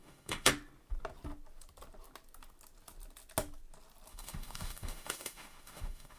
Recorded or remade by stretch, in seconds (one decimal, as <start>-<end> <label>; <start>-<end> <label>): 0.0-0.5 remade; 0.5-4.1 recorded; 4.1-6.2 remade